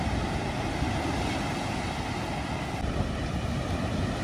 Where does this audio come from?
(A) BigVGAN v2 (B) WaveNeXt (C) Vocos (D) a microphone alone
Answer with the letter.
D